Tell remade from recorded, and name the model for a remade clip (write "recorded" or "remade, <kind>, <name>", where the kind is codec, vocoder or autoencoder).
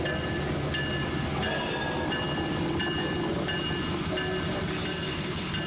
recorded